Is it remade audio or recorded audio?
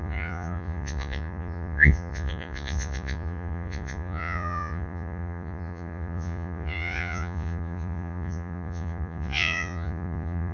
remade